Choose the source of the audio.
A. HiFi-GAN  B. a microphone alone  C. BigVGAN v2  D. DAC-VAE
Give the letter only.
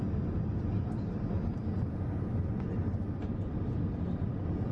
B